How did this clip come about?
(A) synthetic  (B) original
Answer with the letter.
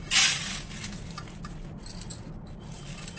B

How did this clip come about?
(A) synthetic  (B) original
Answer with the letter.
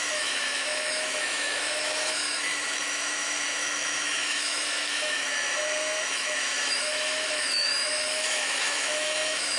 A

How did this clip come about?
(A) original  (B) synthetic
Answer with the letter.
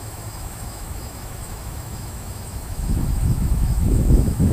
B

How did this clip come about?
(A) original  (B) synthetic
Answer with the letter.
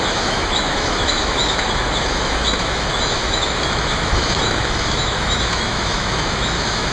B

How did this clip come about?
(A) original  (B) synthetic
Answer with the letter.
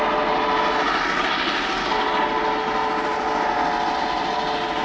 A